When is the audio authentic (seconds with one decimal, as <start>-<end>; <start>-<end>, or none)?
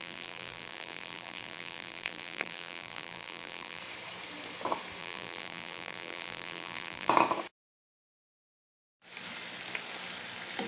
3.8-5.0; 7.1-10.7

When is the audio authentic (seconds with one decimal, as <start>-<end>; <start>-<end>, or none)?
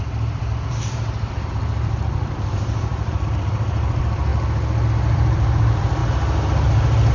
4.3-4.9; 6.0-7.1